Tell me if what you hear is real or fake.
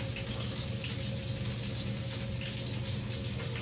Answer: real